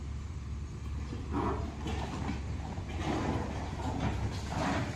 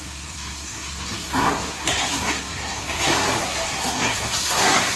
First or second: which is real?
first